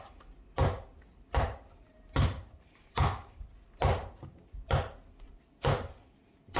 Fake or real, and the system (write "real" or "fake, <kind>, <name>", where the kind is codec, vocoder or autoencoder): real